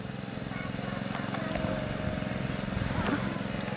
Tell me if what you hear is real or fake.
real